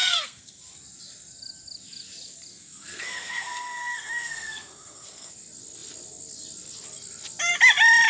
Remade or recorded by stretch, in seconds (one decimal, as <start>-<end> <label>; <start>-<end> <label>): 0.0-0.6 remade; 0.6-2.5 recorded; 2.5-5.3 remade; 5.3-8.1 recorded